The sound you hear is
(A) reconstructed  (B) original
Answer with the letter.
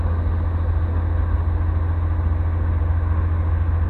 B